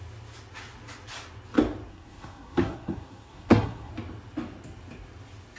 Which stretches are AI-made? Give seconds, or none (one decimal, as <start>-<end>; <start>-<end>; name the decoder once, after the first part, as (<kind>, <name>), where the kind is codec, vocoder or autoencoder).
1.9-3.9 (codec, SNAC)